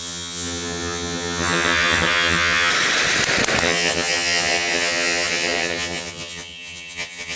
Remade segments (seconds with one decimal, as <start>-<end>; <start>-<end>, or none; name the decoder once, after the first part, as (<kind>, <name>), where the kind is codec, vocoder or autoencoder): 0.0-2.7 (vocoder, HiFi-GAN); 3.6-7.4

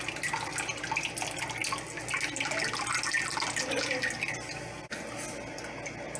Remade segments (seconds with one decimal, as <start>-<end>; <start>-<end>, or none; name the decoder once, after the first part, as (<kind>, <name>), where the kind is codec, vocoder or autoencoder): none

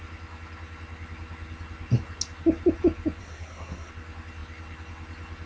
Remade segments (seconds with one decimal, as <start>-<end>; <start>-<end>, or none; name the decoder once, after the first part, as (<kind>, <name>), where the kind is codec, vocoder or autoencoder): 3.2-3.9 (codec, SNAC)

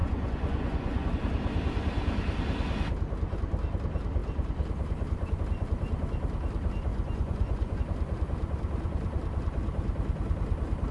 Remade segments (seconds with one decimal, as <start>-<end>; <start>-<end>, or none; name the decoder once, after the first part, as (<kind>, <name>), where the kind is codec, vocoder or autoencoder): 0.0-1.1 (vocoder, Vocos); 6.9-7.8

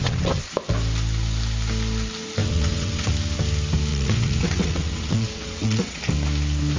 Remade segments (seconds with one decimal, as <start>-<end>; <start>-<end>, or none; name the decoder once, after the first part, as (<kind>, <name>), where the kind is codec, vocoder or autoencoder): 0.0-0.5 (vocoder, WaveNeXt); 2.4-3.1; 3.9-6.0

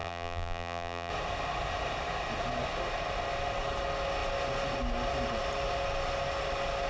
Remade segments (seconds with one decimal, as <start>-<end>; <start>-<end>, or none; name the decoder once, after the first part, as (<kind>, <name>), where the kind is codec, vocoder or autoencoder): 0.0-1.1 (vocoder, BigVGAN v2)